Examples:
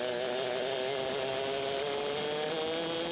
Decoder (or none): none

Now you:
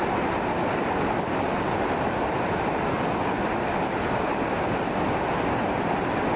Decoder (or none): none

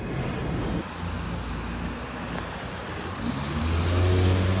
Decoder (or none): none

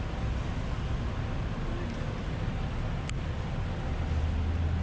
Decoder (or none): none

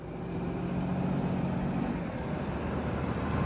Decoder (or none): none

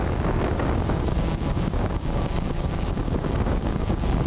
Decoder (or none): codec, DAC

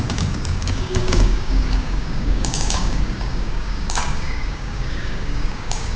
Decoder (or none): codec, DAC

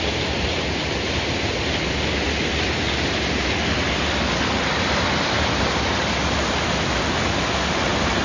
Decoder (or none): none